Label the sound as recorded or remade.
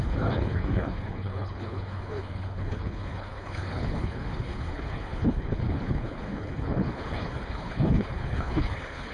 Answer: remade